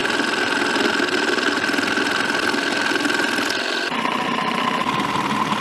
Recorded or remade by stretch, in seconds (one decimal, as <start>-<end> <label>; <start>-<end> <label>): 0.0-5.6 recorded